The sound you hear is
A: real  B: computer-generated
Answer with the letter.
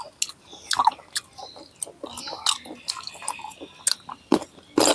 A